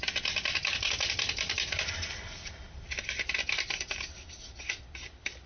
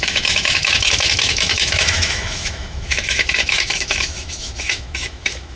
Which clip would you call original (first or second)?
first